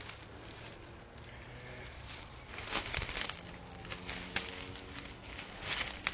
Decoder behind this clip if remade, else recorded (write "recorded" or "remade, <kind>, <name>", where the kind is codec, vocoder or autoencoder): recorded